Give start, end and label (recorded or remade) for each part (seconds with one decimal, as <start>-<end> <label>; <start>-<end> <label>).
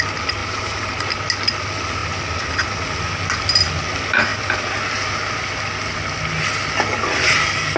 0.0-0.4 recorded; 0.4-1.1 remade; 1.1-7.8 recorded